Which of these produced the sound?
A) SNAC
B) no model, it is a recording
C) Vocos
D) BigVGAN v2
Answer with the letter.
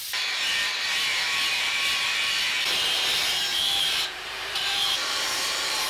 D